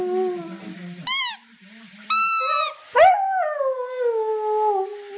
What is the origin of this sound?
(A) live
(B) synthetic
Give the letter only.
A